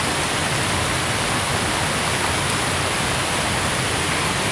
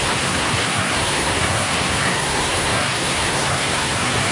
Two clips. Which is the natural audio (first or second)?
first